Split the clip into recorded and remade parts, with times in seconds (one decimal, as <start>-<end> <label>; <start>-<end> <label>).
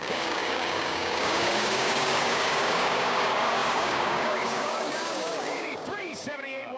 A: 0.0-6.8 remade